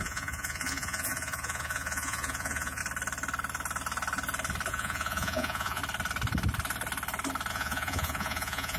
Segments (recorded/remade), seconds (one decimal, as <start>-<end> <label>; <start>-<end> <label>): 0.0-2.8 remade; 2.8-4.7 recorded; 4.7-5.8 remade; 5.8-7.5 recorded; 7.5-8.8 remade